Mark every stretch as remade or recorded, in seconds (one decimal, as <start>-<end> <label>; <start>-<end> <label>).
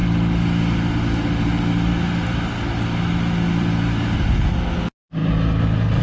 0.0-6.0 recorded